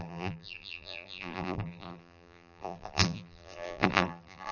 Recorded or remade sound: remade